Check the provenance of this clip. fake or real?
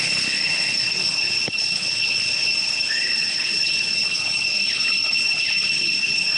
fake